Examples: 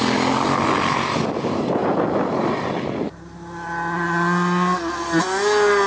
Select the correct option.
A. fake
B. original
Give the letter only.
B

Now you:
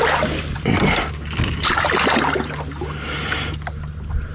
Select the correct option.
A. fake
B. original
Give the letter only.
B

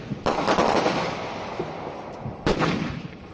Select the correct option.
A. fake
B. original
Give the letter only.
B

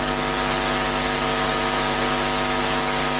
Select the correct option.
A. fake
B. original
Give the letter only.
B